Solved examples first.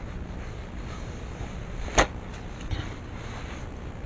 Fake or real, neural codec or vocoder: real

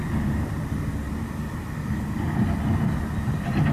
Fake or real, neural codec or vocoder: real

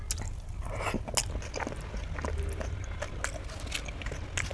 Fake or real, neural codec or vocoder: real